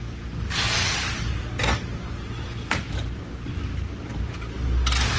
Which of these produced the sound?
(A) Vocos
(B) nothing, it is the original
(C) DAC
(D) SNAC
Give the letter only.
B